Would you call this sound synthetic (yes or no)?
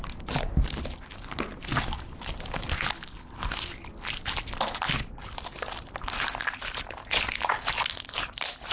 no